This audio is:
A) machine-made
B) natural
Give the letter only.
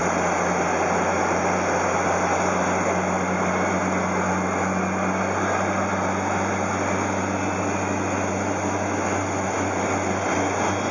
B